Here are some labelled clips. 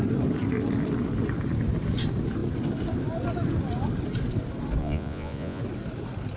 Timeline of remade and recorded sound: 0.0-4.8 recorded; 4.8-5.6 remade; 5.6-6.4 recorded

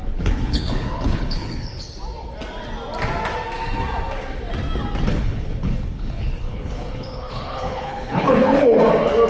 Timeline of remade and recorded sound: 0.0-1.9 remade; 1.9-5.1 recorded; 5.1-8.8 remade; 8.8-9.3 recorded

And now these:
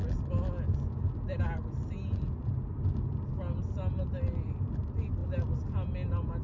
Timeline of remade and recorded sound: 0.0-6.4 recorded

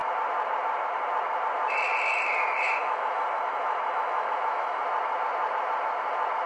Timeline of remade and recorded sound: 0.0-2.8 recorded; 2.8-4.8 remade; 4.8-6.5 recorded